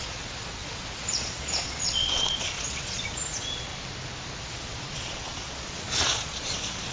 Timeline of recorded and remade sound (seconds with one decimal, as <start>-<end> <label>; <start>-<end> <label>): 0.0-3.7 remade; 3.7-4.5 recorded; 4.5-6.9 remade